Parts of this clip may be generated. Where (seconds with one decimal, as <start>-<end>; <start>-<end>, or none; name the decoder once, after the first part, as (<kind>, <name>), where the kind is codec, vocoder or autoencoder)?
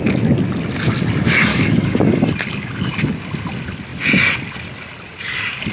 1.5-2.0 (codec, DAC)